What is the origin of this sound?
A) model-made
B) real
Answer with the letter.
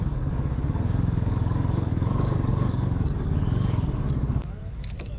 A